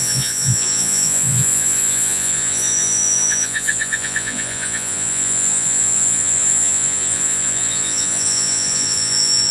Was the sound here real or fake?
fake